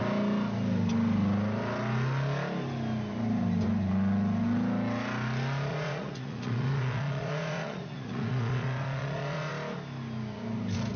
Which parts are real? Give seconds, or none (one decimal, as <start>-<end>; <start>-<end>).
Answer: 0.0-5.7; 9.5-11.0